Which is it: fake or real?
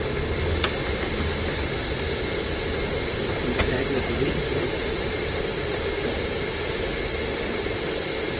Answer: real